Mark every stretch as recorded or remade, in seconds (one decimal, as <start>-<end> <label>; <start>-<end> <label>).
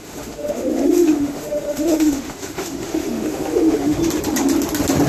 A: 0.0-4.0 remade; 4.0-5.1 recorded